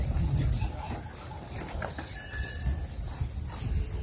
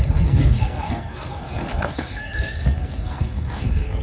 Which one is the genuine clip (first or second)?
first